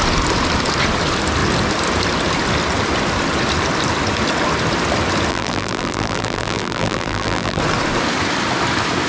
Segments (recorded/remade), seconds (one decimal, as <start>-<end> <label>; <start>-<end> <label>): 0.0-5.3 recorded; 5.3-7.6 remade; 7.6-9.1 recorded